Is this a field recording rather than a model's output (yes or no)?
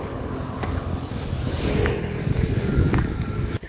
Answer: no